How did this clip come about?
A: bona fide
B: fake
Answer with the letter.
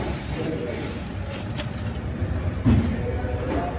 A